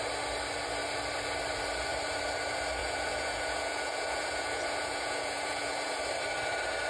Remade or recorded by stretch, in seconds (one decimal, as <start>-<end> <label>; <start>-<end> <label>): 0.0-2.8 recorded; 2.8-6.0 remade; 6.0-6.9 recorded